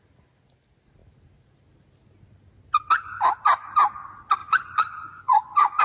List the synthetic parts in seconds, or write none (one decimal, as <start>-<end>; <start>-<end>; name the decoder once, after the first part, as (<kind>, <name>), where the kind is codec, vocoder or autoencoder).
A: 4.4-5.8 (vocoder, Vocos)